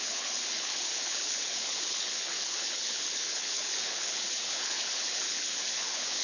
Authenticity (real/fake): fake